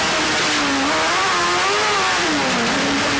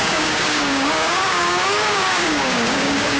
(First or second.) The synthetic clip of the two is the second